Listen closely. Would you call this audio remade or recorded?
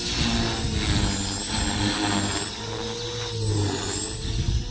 recorded